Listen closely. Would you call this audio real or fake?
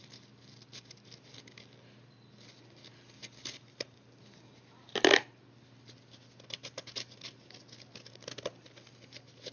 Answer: real